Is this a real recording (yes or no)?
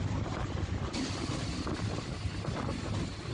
yes